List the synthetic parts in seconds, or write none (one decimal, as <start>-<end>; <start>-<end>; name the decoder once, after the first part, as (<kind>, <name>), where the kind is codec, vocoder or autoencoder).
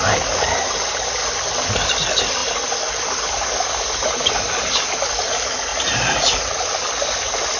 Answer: none